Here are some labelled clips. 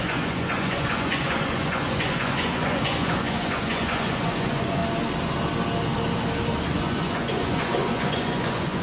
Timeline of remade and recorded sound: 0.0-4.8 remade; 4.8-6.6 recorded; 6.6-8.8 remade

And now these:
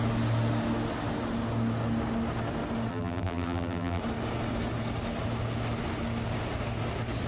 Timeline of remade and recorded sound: 0.0-2.9 recorded; 2.9-4.0 remade; 4.0-7.3 recorded

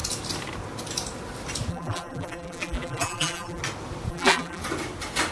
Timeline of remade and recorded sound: 0.0-1.7 recorded; 1.7-3.6 remade; 3.6-4.1 recorded; 4.1-4.6 remade; 4.6-5.3 recorded

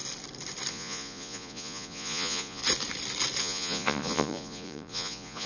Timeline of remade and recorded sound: 0.0-0.7 recorded; 0.7-2.6 remade; 2.6-3.4 recorded; 3.4-5.5 remade

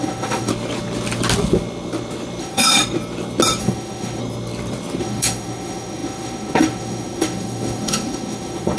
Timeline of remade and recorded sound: 0.0-0.5 remade; 0.5-2.4 recorded; 2.4-2.8 remade; 2.8-3.6 recorded; 3.6-4.2 remade; 4.2-5.0 recorded; 5.0-8.8 remade

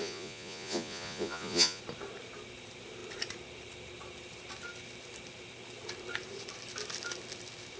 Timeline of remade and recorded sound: 0.0-1.8 remade; 1.8-7.8 recorded